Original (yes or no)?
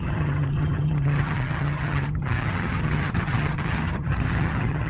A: no